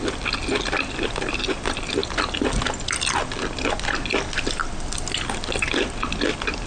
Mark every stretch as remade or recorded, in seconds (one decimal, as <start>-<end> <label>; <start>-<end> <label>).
0.0-6.7 recorded